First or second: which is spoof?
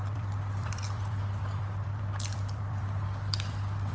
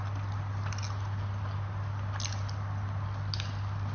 first